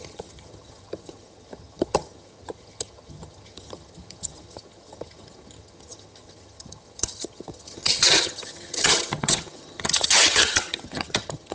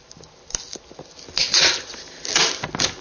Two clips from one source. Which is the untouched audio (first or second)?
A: second